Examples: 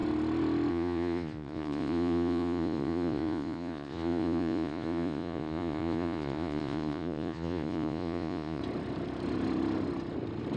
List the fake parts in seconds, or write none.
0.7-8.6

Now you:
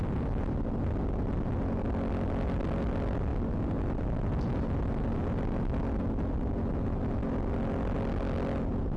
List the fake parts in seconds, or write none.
none

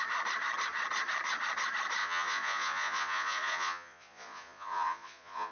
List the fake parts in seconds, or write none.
2.0-5.5

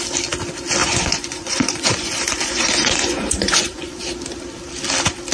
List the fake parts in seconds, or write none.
0.8-4.0

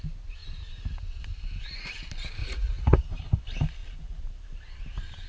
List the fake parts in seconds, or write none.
2.4-3.0

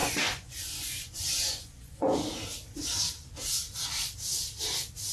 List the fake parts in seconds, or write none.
0.0-2.1

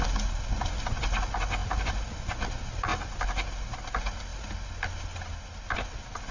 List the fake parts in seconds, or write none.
none

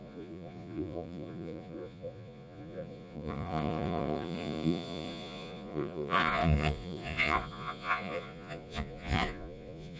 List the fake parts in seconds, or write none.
0.0-10.0